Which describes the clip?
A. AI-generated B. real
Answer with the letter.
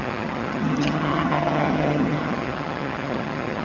A